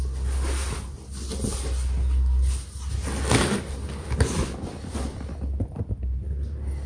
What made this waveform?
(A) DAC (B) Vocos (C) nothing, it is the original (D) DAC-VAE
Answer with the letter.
C